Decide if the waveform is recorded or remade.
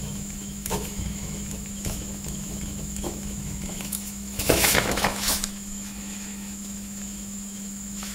remade